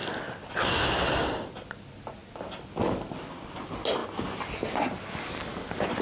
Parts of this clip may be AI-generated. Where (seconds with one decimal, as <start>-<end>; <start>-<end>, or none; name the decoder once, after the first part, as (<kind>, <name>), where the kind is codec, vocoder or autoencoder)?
none